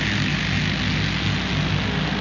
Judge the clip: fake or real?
real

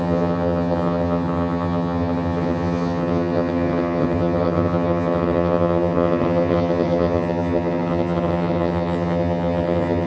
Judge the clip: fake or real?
fake